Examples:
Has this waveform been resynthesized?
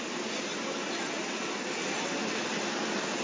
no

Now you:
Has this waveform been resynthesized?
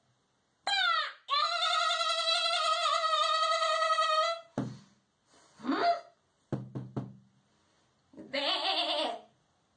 no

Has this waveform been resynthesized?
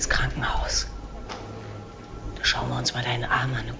no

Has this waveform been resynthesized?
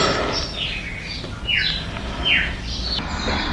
no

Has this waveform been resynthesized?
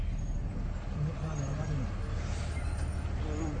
no